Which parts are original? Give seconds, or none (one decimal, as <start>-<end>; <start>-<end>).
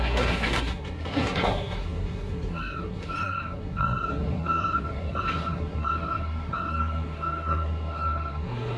none